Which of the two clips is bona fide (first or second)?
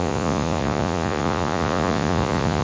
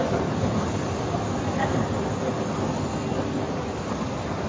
second